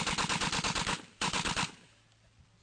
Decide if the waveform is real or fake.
real